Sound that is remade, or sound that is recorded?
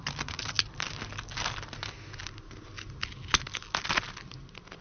recorded